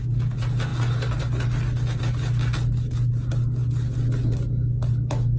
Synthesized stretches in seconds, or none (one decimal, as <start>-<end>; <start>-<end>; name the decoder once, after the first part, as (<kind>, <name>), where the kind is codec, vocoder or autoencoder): none